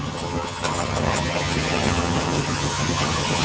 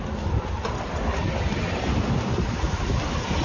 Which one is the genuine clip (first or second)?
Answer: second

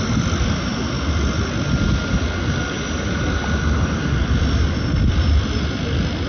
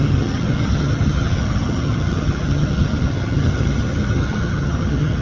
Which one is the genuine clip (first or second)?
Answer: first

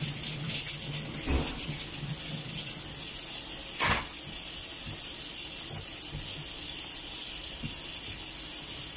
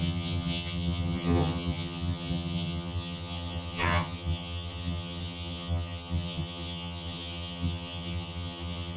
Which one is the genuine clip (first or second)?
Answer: first